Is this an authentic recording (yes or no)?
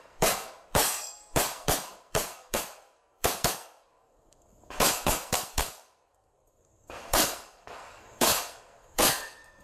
no